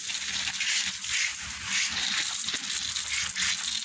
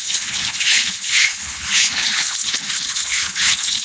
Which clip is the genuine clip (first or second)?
first